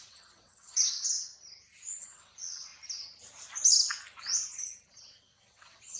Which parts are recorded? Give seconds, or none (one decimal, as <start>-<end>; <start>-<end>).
1.3-2.0; 2.7-4.9